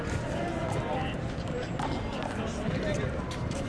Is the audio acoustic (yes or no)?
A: yes